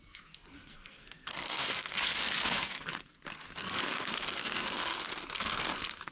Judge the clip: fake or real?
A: fake